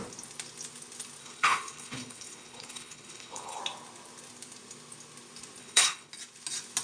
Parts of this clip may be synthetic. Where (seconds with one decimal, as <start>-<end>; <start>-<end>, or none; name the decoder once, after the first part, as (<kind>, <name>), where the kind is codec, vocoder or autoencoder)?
1.2-3.6 (codec, HILCodec); 5.6-6.1